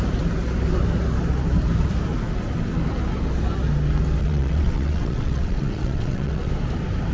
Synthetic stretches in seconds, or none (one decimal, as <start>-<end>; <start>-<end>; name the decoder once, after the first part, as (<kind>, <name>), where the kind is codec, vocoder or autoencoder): 4.2-6.5 (vocoder, WaveNeXt)